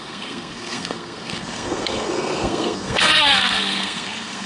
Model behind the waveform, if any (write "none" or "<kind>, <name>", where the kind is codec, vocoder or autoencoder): codec, SNAC